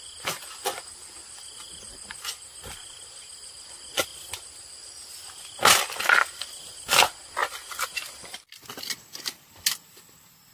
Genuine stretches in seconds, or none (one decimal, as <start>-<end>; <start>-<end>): 0.0-10.5